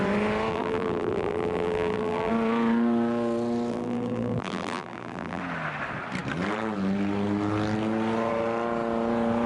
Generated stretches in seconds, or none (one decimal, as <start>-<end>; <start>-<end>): 0.5-2.3; 3.7-5.4

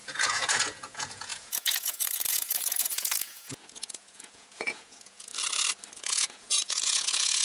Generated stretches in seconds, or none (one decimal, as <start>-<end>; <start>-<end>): 0.0-5.3; 6.0-7.4

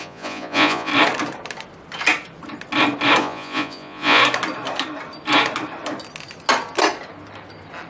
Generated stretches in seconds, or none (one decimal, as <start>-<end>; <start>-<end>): 0.0-0.9; 3.2-4.2